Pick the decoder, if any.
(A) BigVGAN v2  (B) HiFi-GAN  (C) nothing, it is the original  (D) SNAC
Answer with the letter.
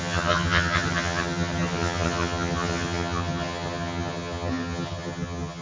B